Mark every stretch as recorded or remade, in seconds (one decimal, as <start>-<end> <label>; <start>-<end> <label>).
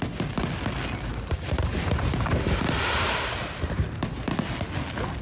0.0-1.1 recorded; 1.1-4.2 remade; 4.2-5.2 recorded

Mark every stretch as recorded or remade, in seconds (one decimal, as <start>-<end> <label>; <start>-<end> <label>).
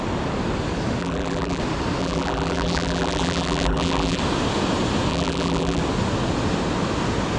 0.0-1.0 recorded; 1.0-1.6 remade; 1.6-2.0 recorded; 2.0-4.2 remade; 4.2-5.1 recorded; 5.1-5.8 remade; 5.8-7.4 recorded